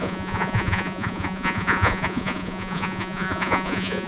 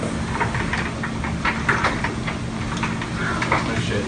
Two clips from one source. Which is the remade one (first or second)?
first